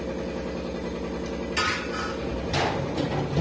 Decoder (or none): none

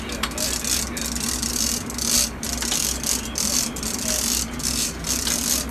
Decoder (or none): none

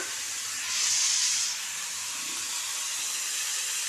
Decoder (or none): none